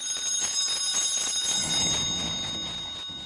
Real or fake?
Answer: real